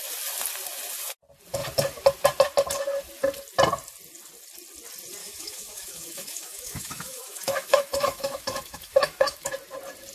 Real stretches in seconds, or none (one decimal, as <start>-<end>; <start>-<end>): 0.0-5.2; 9.5-10.1